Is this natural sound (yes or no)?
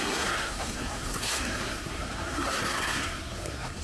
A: no